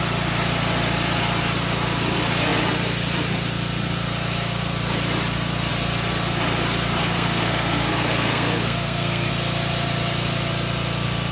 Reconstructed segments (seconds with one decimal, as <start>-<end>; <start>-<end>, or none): 7.0-9.3